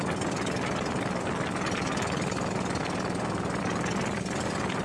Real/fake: real